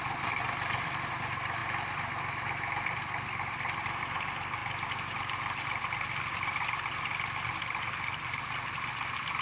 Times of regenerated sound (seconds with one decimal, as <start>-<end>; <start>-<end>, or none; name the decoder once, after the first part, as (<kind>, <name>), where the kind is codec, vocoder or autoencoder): none